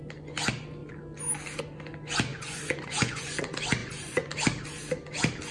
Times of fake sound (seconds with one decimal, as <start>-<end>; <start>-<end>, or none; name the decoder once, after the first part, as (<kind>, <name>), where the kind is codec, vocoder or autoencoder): 2.3-3.4 (vocoder, Vocos); 3.8-4.3

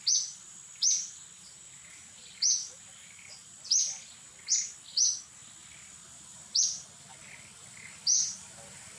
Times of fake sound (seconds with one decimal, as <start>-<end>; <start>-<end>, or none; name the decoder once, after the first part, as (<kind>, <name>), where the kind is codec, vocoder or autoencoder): 3.4-4.1 (vocoder, BigVGAN v2)

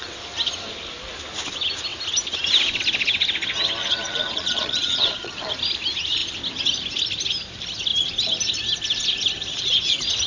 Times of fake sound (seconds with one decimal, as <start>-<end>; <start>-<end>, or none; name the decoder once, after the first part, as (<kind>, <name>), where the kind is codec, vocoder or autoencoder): 3.8-5.5 (vocoder, Vocos)

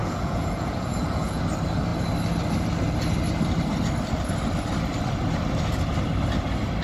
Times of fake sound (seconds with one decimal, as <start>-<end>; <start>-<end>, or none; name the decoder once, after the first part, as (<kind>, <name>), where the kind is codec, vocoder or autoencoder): 0.0-1.4 (vocoder, Vocos)

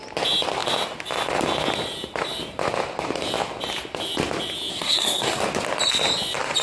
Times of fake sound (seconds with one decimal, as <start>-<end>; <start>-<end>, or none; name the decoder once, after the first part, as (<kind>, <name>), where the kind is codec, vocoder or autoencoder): 4.7-5.4 (codec, SNAC)

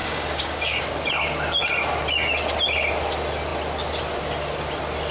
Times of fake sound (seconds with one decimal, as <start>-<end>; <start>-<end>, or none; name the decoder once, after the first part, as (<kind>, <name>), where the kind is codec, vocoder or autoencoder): 0.0-0.8 (codec, DAC)

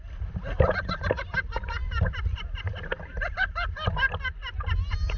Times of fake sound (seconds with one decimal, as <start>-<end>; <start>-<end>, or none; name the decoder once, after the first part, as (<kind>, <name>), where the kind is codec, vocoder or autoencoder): none

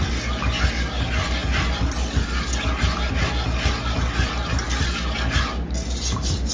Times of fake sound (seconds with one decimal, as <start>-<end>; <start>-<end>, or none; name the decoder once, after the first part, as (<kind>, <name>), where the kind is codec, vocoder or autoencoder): none